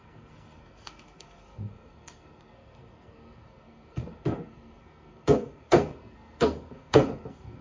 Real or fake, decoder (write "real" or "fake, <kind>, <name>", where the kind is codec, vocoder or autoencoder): fake, codec, SNAC